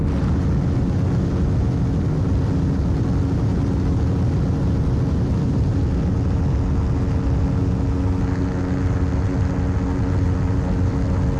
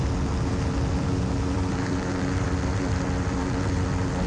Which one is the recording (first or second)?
first